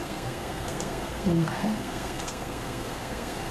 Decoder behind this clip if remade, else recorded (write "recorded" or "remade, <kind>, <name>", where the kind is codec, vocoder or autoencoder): remade, codec, SNAC